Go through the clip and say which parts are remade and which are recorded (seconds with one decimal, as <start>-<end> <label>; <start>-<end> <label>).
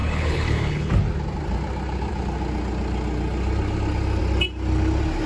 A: 0.0-0.9 remade; 0.9-5.3 recorded